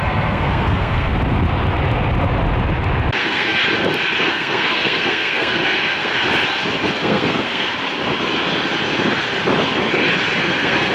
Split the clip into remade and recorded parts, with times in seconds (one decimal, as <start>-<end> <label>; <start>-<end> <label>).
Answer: 0.0-1.1 remade; 1.1-3.2 recorded; 3.2-3.6 remade; 3.6-4.2 recorded; 4.2-6.1 remade; 6.1-6.9 recorded; 6.9-7.7 remade; 7.7-10.4 recorded; 10.4-10.9 remade